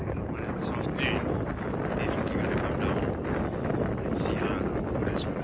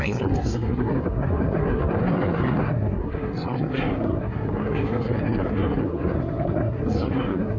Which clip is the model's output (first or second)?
second